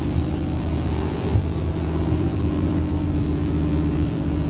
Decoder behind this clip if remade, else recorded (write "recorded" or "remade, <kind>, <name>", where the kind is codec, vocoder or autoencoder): remade, vocoder, BigVGAN v2